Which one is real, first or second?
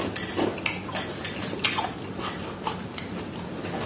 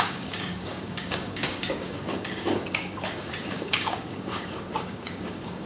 first